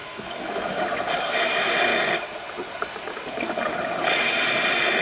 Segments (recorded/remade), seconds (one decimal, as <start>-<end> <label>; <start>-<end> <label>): 0.0-0.8 remade; 0.8-5.0 recorded